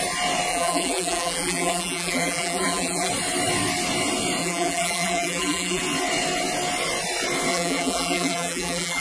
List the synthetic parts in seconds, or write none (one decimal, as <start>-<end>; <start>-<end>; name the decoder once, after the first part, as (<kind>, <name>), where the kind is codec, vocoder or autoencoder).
0.5-3.1 (vocoder, BigVGAN v2); 4.4-5.8; 7.5-9.0